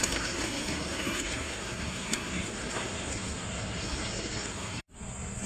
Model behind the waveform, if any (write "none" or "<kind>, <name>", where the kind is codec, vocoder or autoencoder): codec, SNAC